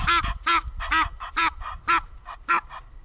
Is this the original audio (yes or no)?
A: yes